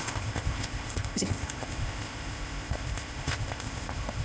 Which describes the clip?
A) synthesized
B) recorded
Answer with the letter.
A